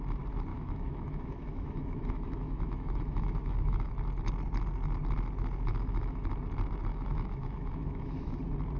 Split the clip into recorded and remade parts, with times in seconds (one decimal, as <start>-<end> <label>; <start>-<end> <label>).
0.0-0.5 recorded; 0.5-3.9 remade; 3.9-5.7 recorded; 5.7-6.3 remade; 6.3-6.9 recorded; 6.9-8.4 remade; 8.4-8.8 recorded